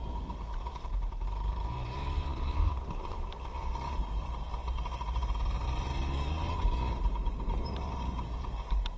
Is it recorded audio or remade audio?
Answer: remade